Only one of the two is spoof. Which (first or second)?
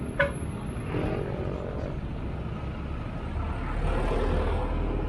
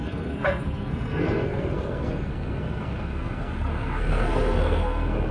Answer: second